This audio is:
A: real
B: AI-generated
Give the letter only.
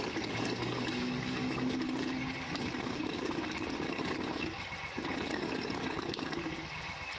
B